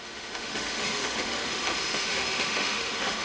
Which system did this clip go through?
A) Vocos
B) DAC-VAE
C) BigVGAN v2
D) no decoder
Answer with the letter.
B